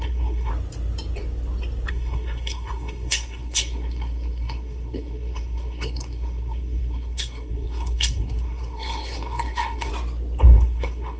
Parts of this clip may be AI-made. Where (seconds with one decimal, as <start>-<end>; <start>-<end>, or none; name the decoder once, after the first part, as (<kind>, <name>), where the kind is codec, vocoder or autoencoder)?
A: 0.0-0.5 (codec, SNAC); 1.9-9.9; 10.4-11.2